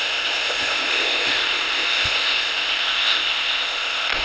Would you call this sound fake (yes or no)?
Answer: yes